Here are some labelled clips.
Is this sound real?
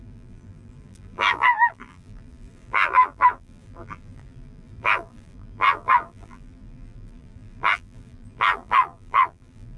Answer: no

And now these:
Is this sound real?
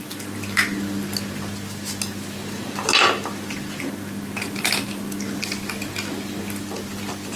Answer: yes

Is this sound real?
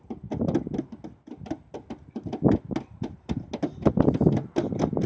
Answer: yes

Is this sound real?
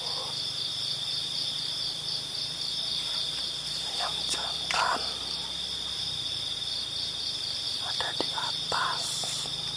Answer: no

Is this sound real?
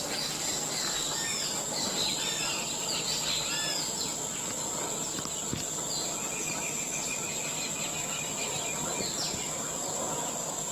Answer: yes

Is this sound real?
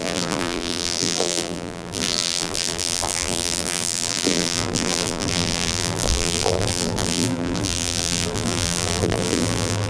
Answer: no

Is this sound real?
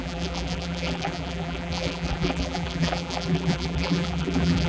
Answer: no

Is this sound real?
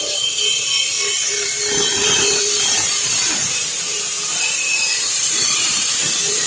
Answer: no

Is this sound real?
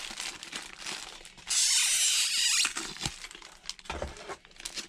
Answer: yes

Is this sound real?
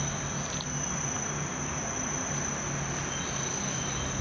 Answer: yes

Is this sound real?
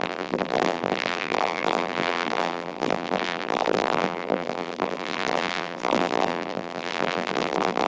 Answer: no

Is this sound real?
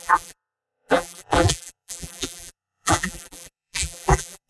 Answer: no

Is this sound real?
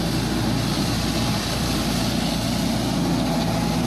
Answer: yes